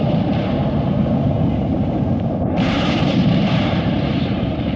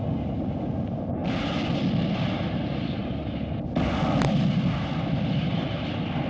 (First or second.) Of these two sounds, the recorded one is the second